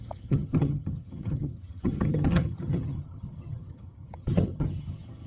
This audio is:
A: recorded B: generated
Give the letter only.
B